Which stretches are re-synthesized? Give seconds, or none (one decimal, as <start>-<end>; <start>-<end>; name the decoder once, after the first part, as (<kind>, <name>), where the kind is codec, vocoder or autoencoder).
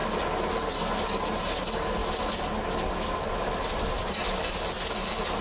none